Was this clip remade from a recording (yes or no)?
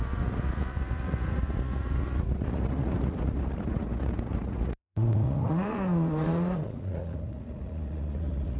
yes